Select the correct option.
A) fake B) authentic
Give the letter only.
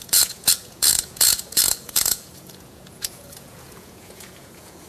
A